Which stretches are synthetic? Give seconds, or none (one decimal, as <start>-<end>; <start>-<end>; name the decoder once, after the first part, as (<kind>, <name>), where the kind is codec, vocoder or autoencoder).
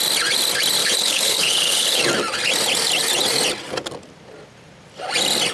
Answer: 0.8-2.0 (codec, HILCodec)